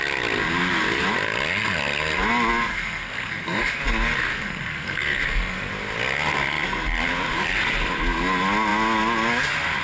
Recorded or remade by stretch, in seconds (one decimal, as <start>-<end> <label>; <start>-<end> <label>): 0.0-2.7 recorded; 2.7-3.8 remade; 3.8-4.3 recorded; 4.3-5.7 remade; 5.7-9.8 recorded